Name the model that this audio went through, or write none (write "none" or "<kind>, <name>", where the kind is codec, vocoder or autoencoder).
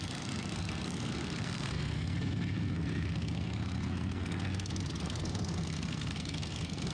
codec, SNAC